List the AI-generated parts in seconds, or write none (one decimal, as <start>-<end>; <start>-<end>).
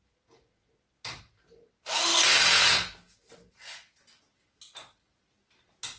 none